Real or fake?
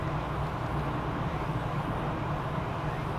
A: real